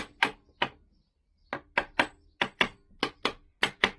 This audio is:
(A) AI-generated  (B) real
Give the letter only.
B